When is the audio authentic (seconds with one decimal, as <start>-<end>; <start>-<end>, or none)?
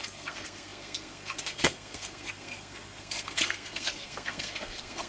none